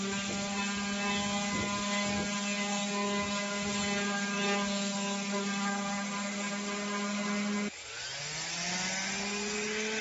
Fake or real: real